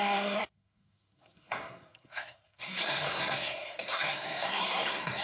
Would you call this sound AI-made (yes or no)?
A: yes